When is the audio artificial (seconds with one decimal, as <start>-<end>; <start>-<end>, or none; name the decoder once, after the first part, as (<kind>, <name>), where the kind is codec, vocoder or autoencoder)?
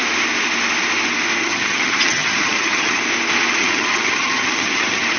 1.4-3.0 (vocoder, HiFi-GAN); 3.6-5.2